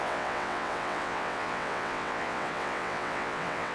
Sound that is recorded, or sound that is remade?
remade